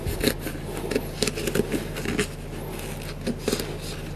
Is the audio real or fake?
real